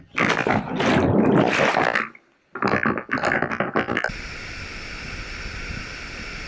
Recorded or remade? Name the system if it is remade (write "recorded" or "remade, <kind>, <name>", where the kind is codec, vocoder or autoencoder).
recorded